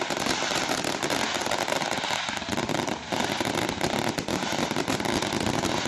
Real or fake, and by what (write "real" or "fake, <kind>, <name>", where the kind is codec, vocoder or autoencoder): fake, vocoder, BigVGAN v2